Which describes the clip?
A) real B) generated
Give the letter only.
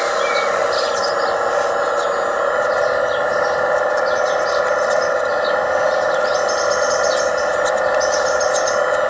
A